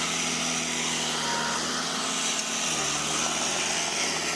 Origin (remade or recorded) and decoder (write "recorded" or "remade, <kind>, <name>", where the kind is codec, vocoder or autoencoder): recorded